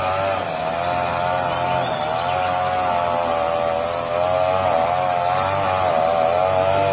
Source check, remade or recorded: recorded